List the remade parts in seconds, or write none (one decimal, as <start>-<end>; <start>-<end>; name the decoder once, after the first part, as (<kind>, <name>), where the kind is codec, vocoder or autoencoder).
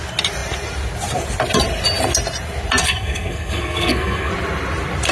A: 2.8-4.3 (codec, SNAC)